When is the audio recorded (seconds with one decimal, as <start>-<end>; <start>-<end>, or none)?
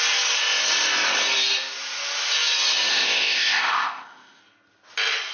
0.0-2.9; 4.4-5.3